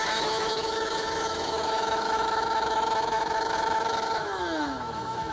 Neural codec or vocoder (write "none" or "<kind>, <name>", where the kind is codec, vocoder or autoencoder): autoencoder, DAC-VAE